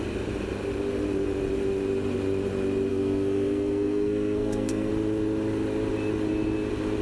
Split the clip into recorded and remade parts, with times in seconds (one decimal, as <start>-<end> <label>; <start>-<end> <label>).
0.0-2.9 recorded; 2.9-4.9 remade; 4.9-7.0 recorded